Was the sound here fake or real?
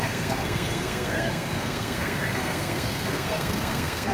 fake